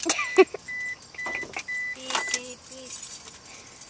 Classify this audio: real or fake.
real